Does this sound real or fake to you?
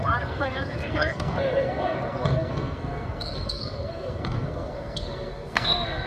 fake